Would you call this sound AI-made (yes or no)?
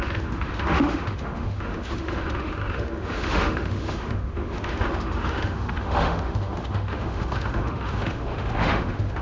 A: yes